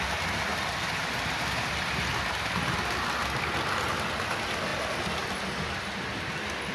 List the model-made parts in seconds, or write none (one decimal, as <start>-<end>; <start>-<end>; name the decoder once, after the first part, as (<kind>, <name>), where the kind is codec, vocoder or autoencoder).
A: none